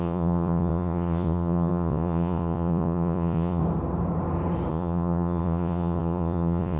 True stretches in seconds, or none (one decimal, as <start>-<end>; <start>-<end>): 3.6-4.7